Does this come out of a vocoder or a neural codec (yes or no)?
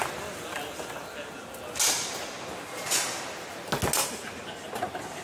no